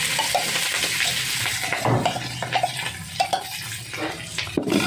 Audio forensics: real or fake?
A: real